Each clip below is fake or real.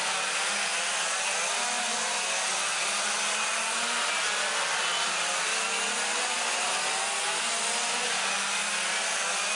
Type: real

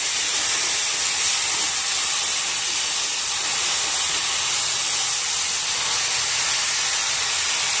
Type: real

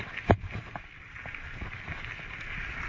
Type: real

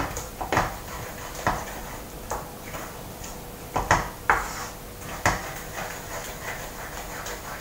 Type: fake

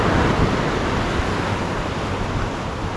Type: real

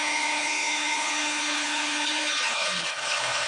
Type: fake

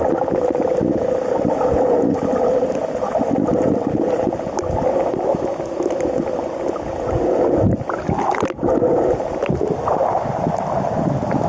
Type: real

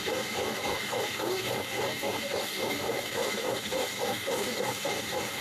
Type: fake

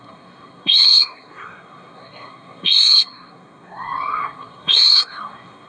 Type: fake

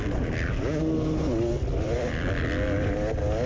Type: real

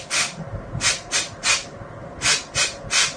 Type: real